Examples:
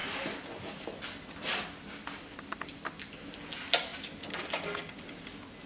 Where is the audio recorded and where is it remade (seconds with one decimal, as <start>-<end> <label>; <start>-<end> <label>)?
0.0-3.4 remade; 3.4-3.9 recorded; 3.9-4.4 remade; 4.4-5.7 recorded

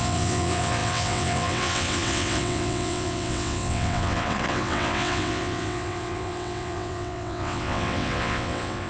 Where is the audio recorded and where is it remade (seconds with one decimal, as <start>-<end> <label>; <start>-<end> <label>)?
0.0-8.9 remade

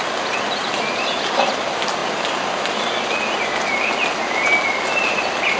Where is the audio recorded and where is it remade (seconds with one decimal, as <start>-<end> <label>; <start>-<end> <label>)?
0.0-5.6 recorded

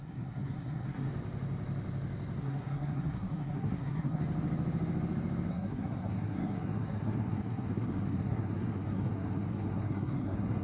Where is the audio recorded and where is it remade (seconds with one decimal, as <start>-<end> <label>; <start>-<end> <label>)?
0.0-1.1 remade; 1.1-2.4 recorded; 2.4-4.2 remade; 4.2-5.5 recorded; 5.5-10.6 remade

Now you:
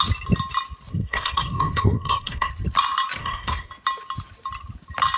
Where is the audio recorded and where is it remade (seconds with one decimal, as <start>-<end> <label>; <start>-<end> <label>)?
0.0-0.9 recorded; 0.9-2.5 remade; 2.5-3.2 recorded; 3.2-3.7 remade; 3.7-5.2 recorded